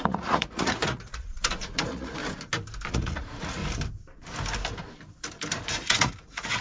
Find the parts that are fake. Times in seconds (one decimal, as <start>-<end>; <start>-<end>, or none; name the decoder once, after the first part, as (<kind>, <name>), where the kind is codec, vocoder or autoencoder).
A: 0.0-2.2 (vocoder, Vocos); 2.9-3.6; 5.7-6.6